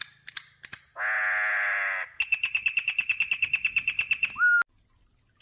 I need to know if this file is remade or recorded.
recorded